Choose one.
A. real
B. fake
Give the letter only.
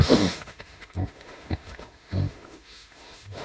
B